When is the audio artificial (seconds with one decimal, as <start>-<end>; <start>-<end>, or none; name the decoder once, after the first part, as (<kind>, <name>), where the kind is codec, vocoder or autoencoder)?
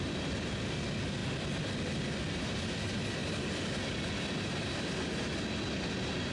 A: none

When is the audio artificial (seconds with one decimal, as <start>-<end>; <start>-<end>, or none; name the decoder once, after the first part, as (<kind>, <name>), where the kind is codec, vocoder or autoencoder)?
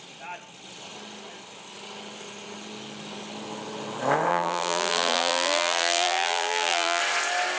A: 4.3-7.0 (vocoder, BigVGAN v2)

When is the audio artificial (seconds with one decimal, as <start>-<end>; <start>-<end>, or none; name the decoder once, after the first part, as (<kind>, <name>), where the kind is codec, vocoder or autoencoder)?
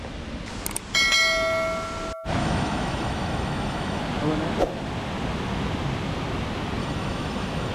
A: 2.4-4.0 (autoencoder, DAC-VAE); 6.8-7.7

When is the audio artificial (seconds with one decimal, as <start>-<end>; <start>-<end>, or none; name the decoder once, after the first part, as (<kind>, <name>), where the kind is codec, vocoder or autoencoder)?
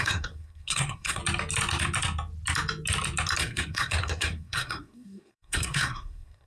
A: 0.0-1.2 (codec, SNAC); 3.4-6.5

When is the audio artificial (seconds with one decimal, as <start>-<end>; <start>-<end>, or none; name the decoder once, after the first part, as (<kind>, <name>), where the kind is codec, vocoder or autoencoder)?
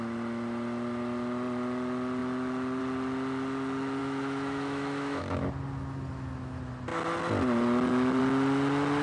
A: 4.0-5.5 (autoencoder, DAC-VAE)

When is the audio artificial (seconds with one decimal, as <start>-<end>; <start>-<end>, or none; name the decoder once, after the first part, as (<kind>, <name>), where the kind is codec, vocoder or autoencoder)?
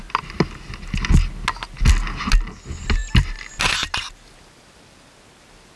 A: 3.0-3.5 (vocoder, BigVGAN v2)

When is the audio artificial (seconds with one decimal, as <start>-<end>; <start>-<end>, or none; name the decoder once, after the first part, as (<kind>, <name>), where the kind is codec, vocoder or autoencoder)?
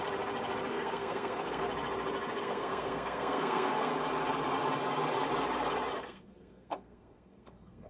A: 0.7-1.6 (codec, SNAC); 2.4-3.9; 6.0-7.9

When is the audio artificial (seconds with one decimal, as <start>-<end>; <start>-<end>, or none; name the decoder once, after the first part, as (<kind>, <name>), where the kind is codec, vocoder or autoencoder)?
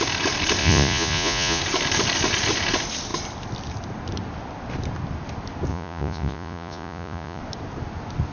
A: 0.6-1.6 (vocoder, Vocos); 5.7-7.4